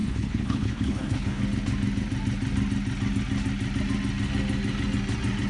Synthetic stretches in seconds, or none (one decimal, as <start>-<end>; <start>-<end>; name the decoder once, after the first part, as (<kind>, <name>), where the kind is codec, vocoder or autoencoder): 0.0-1.4 (codec, HILCodec)